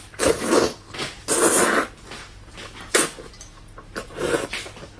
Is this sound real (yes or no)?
yes